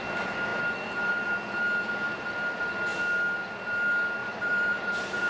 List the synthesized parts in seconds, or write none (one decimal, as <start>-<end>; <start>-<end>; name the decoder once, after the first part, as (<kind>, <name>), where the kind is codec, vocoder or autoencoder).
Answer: 4.2-5.3 (vocoder, BigVGAN v2)

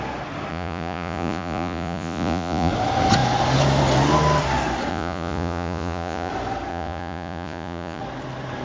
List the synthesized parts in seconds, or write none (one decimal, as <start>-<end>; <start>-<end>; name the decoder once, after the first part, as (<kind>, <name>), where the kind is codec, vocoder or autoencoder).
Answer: 0.5-2.7 (vocoder, Vocos); 4.9-6.3; 6.7-8.0

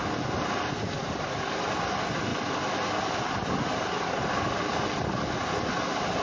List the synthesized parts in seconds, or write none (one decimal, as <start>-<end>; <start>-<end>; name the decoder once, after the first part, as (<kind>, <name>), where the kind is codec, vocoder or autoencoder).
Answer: none

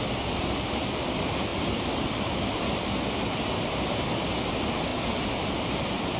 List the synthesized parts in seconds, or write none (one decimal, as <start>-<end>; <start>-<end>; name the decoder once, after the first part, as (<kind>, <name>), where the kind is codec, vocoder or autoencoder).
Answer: none